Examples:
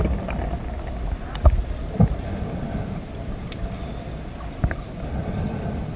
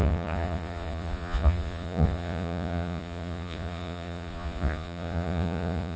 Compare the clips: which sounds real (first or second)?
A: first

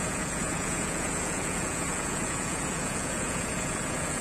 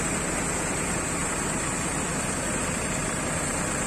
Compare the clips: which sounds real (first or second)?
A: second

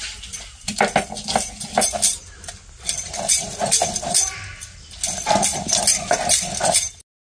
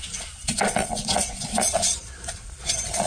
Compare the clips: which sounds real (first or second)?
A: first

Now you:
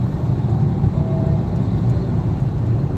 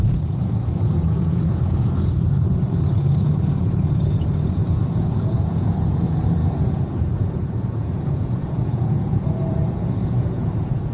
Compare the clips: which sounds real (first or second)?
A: first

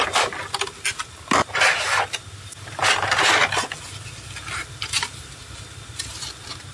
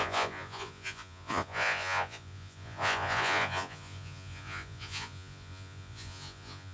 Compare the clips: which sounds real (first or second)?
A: first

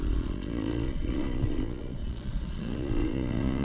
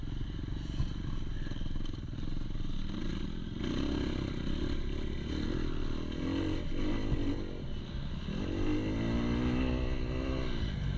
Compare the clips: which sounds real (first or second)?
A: second